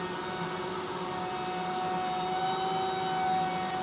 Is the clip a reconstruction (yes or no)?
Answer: no